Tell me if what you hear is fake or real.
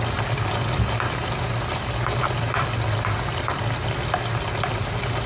real